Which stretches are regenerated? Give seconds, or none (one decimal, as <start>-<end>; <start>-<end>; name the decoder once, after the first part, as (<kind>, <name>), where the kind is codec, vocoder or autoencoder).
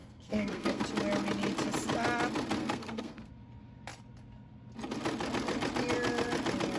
0.0-0.8 (codec, SNAC); 2.6-3.3